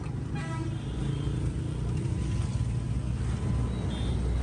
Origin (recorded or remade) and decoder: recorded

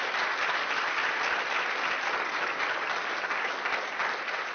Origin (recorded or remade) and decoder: recorded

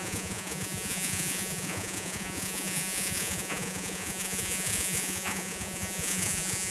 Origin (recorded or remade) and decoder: remade, vocoder, Vocos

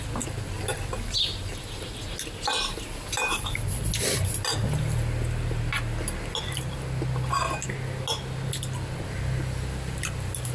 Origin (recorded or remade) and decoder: recorded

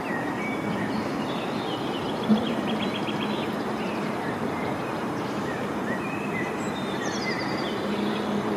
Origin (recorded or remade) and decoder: remade, vocoder, BigVGAN v2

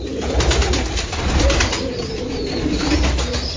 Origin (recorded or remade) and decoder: recorded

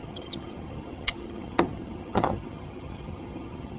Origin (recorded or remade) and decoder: remade, vocoder, HiFi-GAN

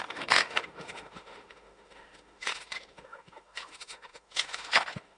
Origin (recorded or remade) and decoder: remade, autoencoder, DAC-VAE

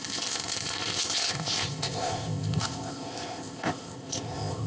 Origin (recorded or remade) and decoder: remade, codec, ZipCodec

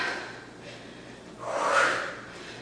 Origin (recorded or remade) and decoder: recorded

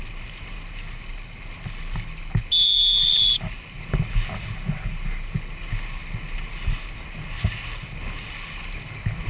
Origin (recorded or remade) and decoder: recorded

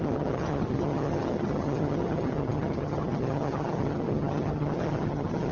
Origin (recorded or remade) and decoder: remade, vocoder, HiFi-GAN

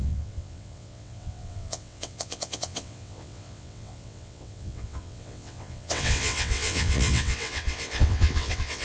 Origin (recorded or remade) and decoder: remade, vocoder, WaveNeXt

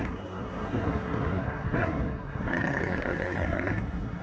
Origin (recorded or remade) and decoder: remade, codec, SNAC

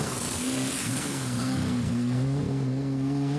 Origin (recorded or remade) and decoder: remade, codec, SNAC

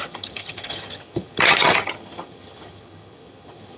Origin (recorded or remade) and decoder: remade, vocoder, HiFi-GAN